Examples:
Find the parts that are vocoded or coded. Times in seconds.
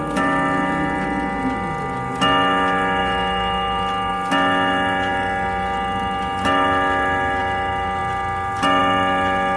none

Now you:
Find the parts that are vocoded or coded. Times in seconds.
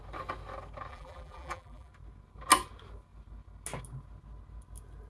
0.9-1.9 (vocoder, BigVGAN v2)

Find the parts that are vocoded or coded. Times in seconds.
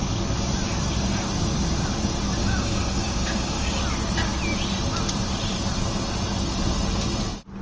2.4-3.8 (codec, DAC)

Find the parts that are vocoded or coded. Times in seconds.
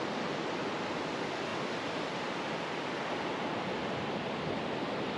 none